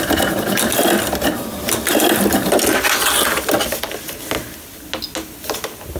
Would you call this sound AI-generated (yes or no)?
no